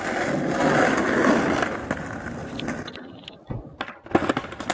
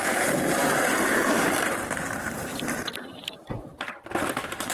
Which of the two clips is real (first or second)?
first